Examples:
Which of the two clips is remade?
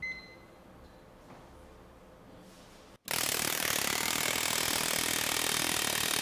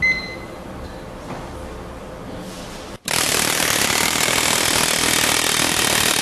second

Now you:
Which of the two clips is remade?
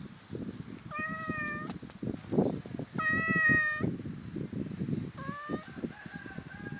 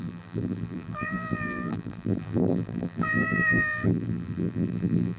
second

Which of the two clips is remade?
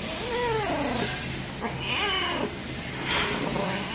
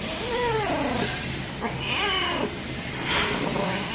second